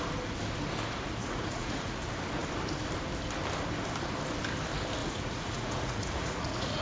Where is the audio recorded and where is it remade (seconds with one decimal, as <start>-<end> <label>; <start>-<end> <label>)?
0.0-1.2 recorded; 1.2-2.0 remade; 2.0-5.0 recorded; 5.0-6.8 remade